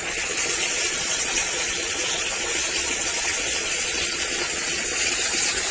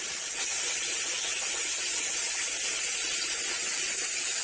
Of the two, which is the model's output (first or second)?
first